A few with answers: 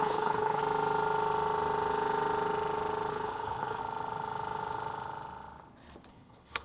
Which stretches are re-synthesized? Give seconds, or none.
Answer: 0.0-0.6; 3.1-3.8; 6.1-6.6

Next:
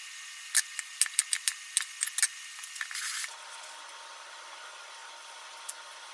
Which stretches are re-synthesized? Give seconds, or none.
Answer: none

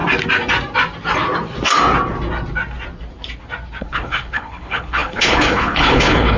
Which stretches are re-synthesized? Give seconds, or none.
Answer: 3.8-6.4